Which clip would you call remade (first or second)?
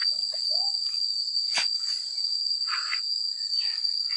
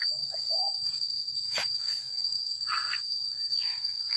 second